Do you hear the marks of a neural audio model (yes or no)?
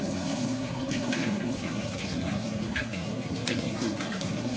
yes